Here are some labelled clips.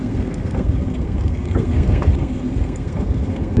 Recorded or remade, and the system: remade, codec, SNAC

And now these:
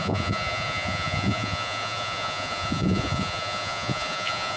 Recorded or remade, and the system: remade, vocoder, Vocos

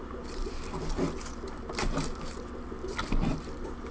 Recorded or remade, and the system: recorded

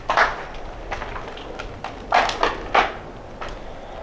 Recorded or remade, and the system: recorded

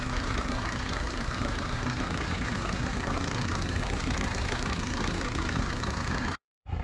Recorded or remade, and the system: remade, codec, SNAC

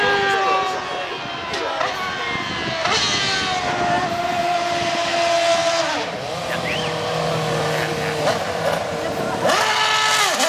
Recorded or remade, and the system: recorded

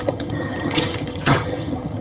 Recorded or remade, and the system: remade, vocoder, HiFi-GAN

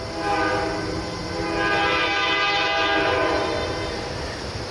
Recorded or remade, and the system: recorded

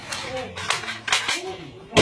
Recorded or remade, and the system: recorded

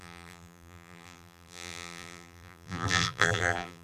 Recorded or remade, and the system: remade, vocoder, BigVGAN v2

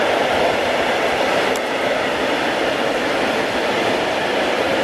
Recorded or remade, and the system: recorded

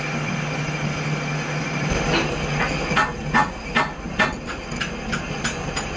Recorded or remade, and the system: recorded